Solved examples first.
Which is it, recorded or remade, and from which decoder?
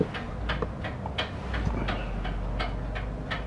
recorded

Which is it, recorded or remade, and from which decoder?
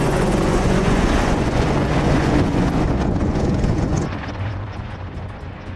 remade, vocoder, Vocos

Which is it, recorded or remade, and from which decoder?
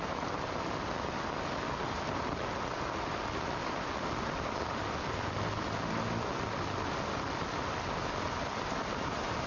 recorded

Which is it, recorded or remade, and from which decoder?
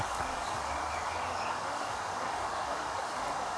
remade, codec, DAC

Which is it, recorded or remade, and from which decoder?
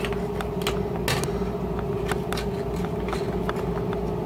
recorded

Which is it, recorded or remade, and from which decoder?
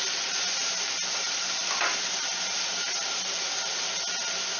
recorded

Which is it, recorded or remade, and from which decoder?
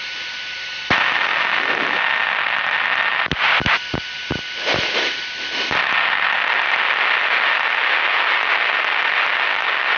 recorded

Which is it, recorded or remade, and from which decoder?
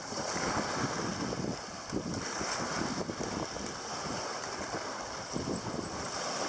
recorded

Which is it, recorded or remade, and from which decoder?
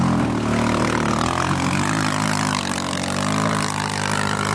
recorded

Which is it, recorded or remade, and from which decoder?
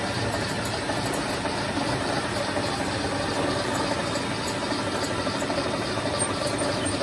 remade, vocoder, BigVGAN v2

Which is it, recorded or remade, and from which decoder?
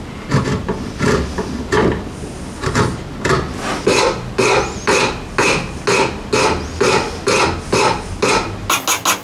recorded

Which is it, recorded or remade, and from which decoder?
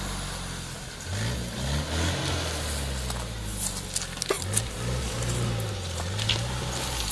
recorded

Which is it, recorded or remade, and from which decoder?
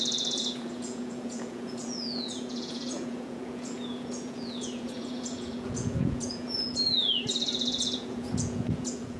remade, vocoder, Vocos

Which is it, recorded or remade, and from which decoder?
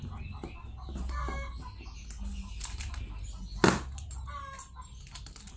recorded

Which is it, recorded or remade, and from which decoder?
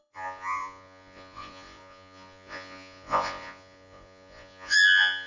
remade, vocoder, Vocos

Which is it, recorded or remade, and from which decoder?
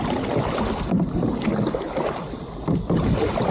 recorded